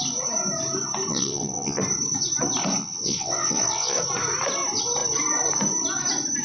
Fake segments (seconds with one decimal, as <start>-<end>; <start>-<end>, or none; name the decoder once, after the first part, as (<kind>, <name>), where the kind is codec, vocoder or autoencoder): 1.1-1.8 (vocoder, WaveNeXt); 2.8-4.0